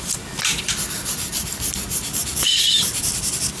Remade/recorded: remade